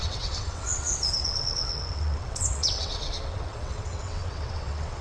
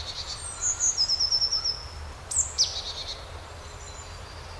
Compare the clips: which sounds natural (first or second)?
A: second